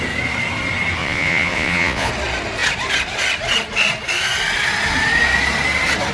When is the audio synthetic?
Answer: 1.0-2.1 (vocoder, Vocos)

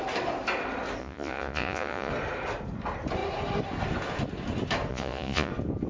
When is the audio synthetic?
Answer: 1.0-2.1 (vocoder, Vocos); 4.9-5.5

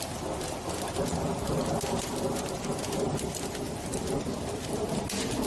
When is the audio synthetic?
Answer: none

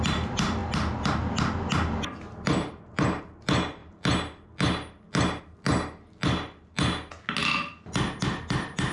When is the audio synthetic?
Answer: none

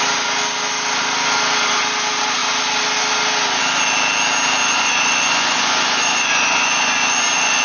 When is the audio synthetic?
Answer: 4.6-7.6 (vocoder, Vocos)

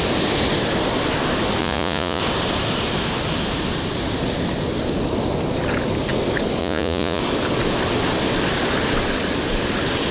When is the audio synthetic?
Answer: 1.6-2.2 (vocoder, Vocos); 6.6-7.2

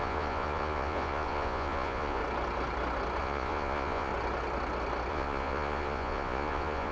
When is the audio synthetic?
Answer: 0.0-2.2 (vocoder, Vocos); 3.2-4.1; 5.1-6.9

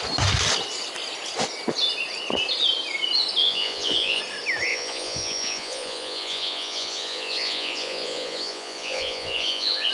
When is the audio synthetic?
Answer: 3.4-4.2 (vocoder, Vocos); 4.7-9.9